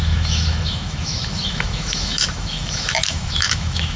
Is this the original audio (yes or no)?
no